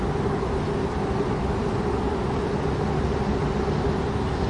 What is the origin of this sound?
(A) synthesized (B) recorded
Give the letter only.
B